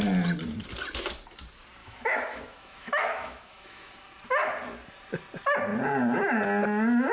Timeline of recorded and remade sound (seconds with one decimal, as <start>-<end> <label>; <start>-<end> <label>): 0.0-1.8 recorded; 1.8-3.9 remade; 3.9-7.1 recorded